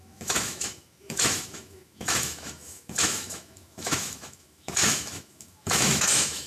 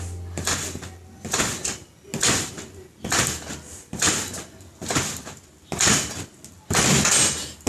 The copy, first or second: first